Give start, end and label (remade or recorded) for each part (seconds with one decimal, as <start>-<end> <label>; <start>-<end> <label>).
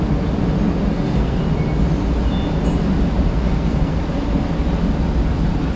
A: 0.0-0.9 recorded; 0.9-1.4 remade; 1.4-3.3 recorded; 3.3-4.0 remade; 4.0-5.8 recorded